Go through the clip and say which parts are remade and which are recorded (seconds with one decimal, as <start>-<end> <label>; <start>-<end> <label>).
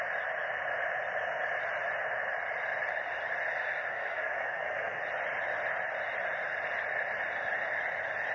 0.0-3.9 recorded; 3.9-5.0 remade; 5.0-8.3 recorded